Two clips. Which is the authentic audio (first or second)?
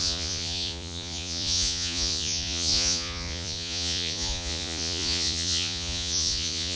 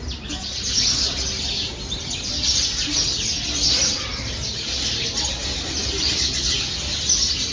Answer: second